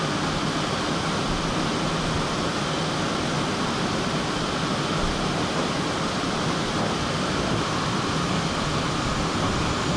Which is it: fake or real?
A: real